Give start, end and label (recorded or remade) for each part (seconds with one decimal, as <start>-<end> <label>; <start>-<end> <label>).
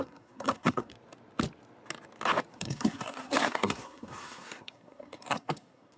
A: 0.0-0.9 remade; 0.9-2.5 recorded; 2.5-6.0 remade